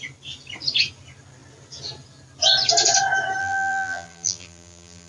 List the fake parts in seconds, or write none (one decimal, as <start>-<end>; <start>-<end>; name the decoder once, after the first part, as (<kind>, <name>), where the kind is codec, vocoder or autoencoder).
3.4-5.1 (vocoder, BigVGAN v2)